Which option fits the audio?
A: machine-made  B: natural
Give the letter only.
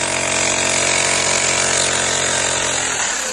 B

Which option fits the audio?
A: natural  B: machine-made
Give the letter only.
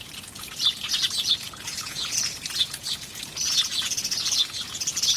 B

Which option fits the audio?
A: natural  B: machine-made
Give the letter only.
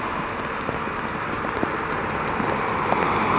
A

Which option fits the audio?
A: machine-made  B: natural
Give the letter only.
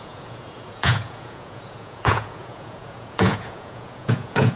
A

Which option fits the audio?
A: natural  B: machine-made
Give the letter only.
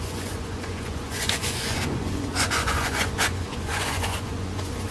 B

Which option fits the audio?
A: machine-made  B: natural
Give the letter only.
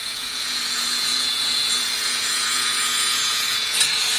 A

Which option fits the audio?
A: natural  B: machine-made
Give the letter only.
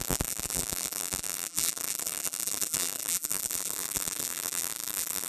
B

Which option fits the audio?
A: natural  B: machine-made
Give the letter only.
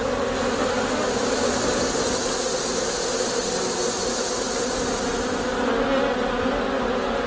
A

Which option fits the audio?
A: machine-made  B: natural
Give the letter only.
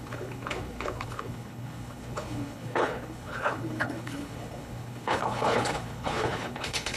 A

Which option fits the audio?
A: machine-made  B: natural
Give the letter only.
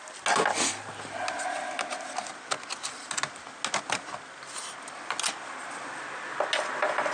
B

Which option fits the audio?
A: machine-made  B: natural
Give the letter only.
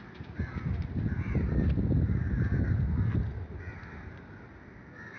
B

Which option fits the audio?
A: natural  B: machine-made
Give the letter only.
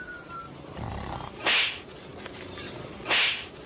A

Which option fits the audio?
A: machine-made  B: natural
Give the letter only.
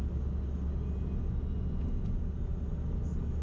B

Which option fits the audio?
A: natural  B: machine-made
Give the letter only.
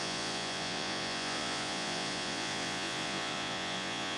B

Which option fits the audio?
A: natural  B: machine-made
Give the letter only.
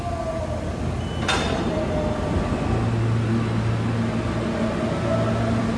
A